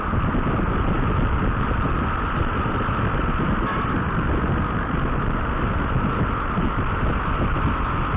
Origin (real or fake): real